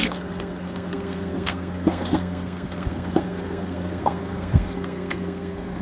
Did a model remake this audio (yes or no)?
yes